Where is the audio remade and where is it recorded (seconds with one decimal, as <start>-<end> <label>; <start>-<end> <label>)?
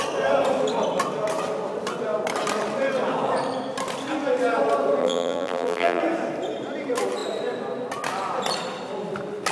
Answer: 0.0-5.0 recorded; 5.0-6.0 remade; 6.0-9.5 recorded